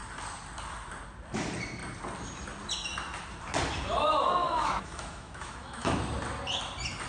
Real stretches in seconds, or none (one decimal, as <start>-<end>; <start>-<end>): 0.0-4.4; 6.0-7.1